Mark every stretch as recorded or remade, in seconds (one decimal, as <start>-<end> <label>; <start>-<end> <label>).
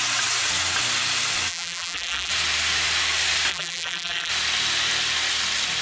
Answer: 0.0-1.5 recorded; 1.5-2.3 remade; 2.3-3.5 recorded; 3.5-4.3 remade; 4.3-5.8 recorded